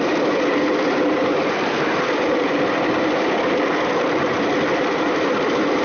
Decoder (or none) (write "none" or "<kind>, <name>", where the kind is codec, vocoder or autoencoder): none